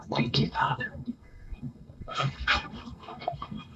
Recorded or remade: remade